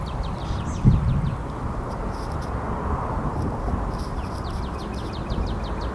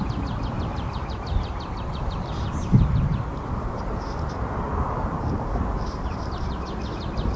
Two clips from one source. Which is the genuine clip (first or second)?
first